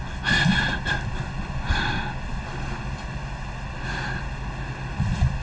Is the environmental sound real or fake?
real